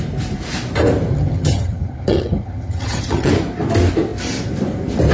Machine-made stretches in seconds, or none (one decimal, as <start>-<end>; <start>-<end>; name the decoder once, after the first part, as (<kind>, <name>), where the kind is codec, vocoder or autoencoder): 1.1-3.3 (vocoder, HiFi-GAN)

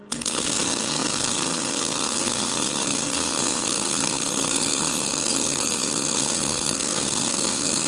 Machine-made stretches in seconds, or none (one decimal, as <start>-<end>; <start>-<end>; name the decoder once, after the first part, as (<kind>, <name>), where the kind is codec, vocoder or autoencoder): 0.0-7.9 (codec, SNAC)

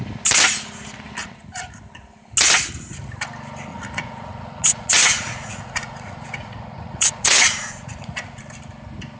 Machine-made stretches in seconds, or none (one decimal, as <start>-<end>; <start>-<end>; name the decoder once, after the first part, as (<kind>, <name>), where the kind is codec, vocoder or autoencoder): 1.2-1.8 (vocoder, Vocos); 3.7-8.4

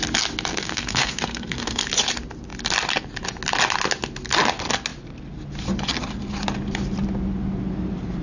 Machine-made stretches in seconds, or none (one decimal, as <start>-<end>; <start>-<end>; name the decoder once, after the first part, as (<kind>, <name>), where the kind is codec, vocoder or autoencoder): 0.5-1.8 (codec, SNAC)

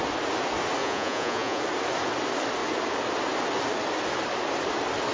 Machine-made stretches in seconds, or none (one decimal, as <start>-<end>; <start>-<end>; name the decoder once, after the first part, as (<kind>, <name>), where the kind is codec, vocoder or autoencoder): 0.8-1.6 (vocoder, Vocos)

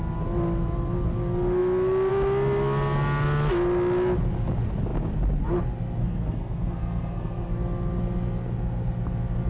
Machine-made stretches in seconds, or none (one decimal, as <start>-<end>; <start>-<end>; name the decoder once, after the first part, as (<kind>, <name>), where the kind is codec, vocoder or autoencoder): 6.0-7.5 (codec, SNAC)